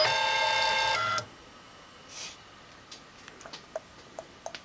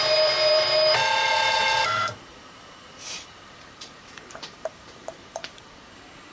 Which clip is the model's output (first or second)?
second